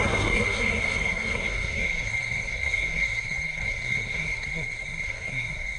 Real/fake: fake